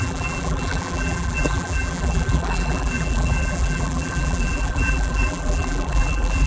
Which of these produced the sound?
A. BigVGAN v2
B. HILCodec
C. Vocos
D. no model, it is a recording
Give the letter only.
A